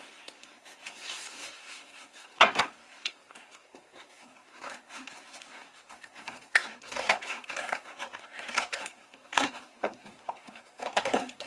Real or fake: fake